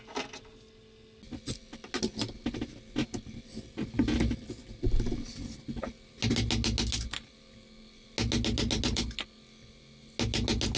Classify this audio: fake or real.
real